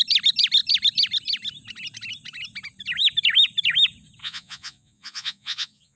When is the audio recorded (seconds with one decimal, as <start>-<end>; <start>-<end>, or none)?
0.0-4.2